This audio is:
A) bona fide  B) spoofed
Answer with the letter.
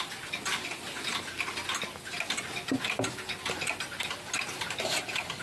A